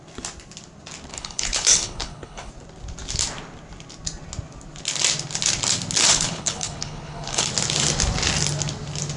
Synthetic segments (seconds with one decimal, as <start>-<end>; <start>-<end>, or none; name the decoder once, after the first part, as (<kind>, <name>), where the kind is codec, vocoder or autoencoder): 1.1-2.5 (codec, HILCodec); 6.1-7.5